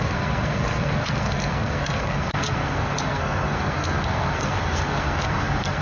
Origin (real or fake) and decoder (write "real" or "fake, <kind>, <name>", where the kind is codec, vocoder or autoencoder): fake, codec, SNAC